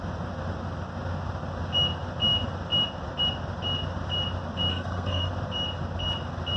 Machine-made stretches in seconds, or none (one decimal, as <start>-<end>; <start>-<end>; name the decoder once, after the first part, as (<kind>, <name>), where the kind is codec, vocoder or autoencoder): 4.7-5.3 (codec, SNAC)